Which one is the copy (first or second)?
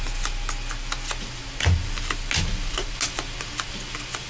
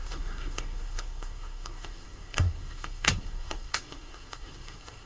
second